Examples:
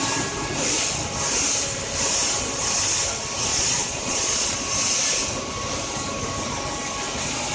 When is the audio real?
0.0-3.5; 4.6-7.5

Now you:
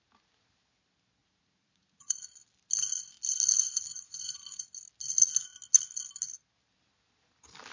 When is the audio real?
0.0-1.2; 2.2-3.9; 4.6-7.7

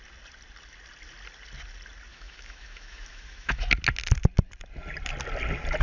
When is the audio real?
0.0-2.1; 3.6-5.8

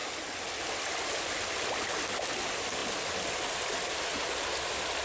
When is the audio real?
0.0-5.0

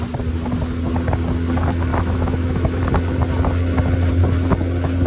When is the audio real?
0.0-1.9; 2.8-5.1

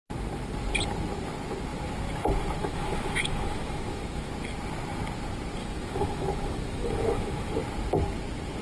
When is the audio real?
0.0-2.6; 4.3-5.6; 7.5-8.6

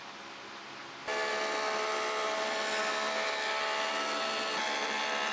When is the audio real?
0.0-5.3